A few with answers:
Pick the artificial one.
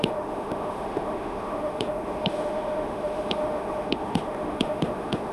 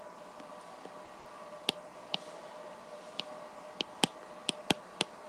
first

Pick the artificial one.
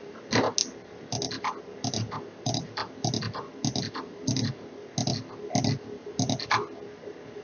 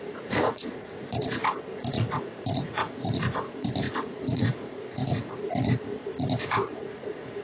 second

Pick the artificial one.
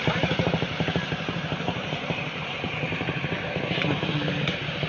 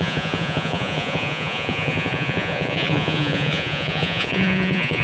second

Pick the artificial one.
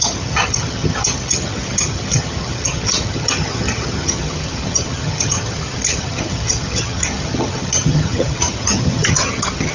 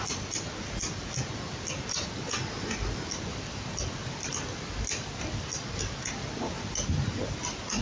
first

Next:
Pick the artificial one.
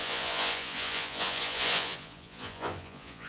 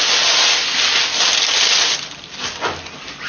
first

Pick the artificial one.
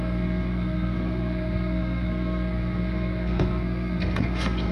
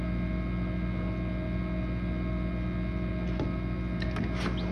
first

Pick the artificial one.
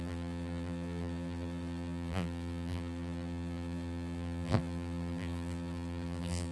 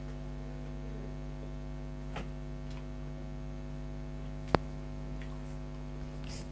first